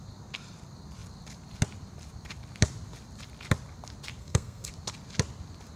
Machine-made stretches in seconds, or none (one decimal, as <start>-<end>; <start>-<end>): 4.2-4.7